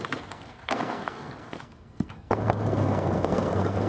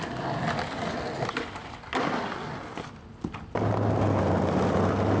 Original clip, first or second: second